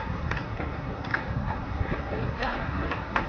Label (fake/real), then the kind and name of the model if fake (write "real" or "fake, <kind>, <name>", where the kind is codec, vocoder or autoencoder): fake, codec, SNAC